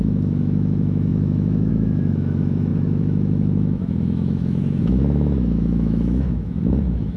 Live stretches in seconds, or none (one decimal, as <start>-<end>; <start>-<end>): none